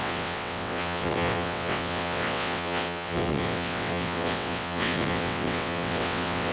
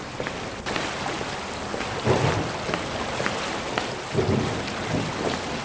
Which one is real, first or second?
second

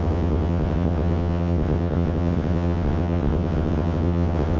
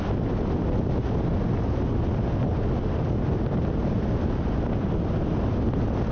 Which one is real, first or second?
second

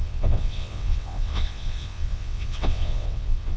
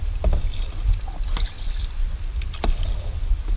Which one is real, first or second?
second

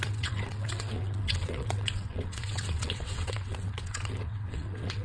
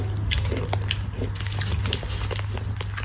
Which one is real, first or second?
second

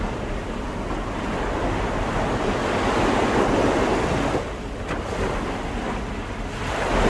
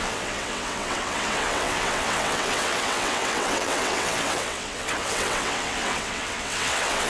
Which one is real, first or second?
first